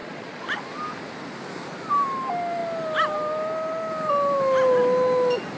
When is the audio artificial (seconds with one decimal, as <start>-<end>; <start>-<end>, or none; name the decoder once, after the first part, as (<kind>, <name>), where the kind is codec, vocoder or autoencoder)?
0.0-0.6 (vocoder, Vocos)

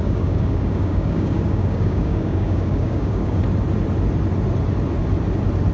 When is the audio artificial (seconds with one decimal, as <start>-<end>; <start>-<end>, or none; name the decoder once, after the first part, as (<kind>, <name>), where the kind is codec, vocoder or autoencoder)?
0.0-3.4 (codec, DAC)

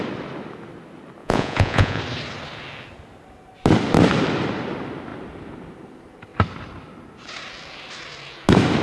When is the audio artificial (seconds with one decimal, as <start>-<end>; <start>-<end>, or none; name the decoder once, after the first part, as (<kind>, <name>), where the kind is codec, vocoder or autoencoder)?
1.2-2.0 (vocoder, Vocos)

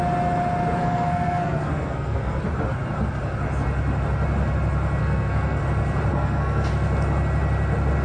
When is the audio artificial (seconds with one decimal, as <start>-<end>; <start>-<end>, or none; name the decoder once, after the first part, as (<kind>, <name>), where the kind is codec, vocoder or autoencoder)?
0.8-2.4 (codec, SNAC); 5.0-5.6; 6.1-6.7

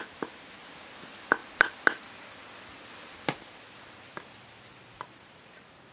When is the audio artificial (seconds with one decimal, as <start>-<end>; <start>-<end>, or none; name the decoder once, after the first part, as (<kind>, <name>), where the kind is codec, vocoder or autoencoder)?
none

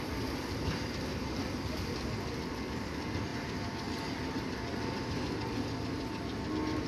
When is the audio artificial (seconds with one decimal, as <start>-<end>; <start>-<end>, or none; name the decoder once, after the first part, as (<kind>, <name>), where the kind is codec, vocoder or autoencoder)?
none